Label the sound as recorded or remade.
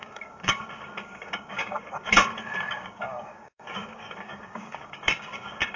remade